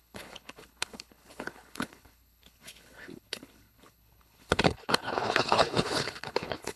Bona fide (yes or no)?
no